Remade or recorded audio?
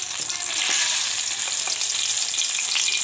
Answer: recorded